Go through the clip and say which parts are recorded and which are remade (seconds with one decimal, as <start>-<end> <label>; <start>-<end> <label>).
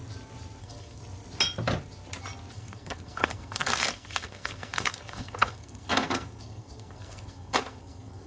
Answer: 0.0-0.6 recorded; 0.6-1.0 remade; 1.0-2.5 recorded; 2.5-8.3 remade